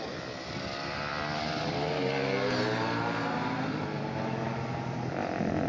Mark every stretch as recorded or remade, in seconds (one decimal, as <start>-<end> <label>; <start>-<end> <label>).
0.0-5.7 recorded